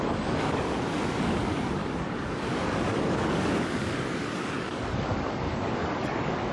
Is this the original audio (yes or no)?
no